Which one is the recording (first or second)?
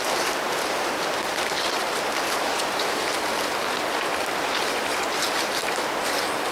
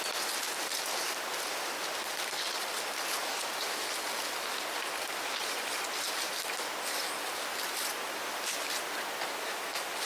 second